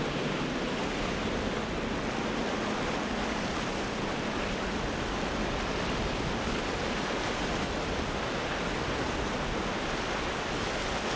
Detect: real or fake real